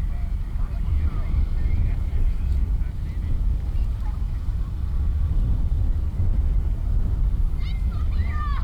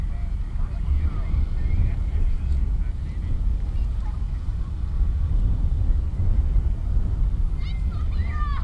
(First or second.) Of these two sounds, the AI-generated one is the first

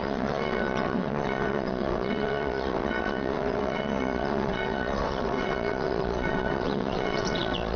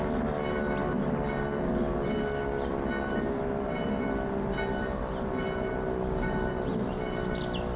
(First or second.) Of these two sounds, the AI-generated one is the first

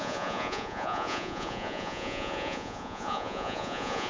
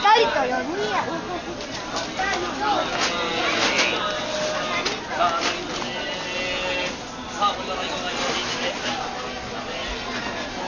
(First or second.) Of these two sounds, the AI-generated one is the first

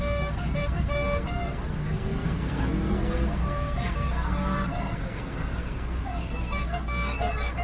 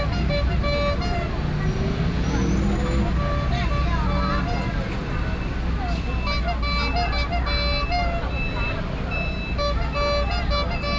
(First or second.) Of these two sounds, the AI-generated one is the first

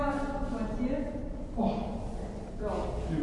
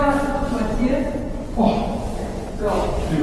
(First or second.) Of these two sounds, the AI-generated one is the second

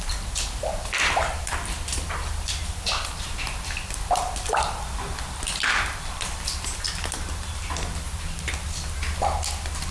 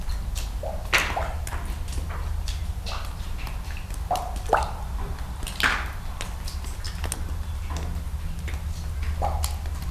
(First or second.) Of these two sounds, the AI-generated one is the first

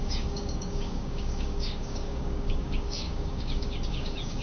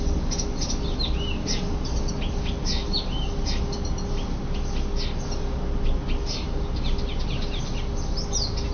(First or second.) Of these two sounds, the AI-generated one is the first